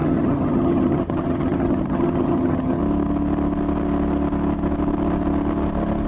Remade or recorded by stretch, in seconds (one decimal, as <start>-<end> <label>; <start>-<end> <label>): 0.0-2.8 remade; 2.8-6.1 recorded